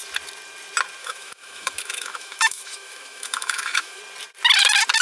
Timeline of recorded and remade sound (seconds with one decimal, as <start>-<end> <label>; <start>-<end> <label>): 0.0-1.0 recorded; 1.0-4.0 remade; 4.0-5.0 recorded